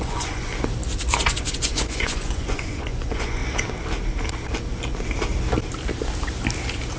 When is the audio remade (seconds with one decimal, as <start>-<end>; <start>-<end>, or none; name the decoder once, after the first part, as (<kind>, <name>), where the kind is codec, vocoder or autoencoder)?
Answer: 0.0-0.5 (vocoder, Vocos); 1.3-3.4